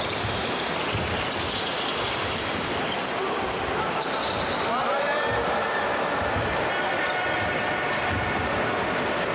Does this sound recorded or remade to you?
recorded